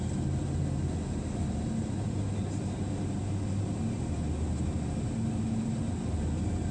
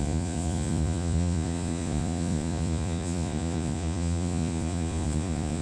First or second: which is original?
first